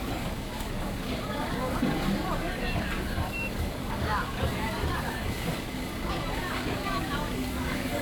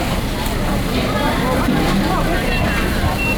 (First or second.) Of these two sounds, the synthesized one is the first